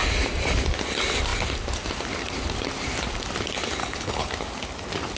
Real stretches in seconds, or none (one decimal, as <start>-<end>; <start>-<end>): 0.0-3.8; 4.3-5.2